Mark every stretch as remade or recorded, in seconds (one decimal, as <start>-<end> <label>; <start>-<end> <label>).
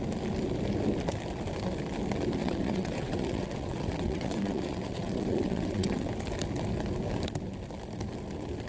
0.0-2.4 recorded; 2.4-6.1 remade; 6.1-8.7 recorded